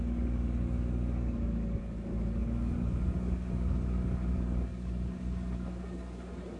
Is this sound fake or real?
fake